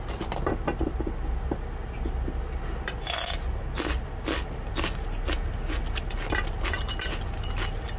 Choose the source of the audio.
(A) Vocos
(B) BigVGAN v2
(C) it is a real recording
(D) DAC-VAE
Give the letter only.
C